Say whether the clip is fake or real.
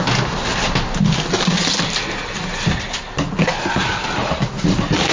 real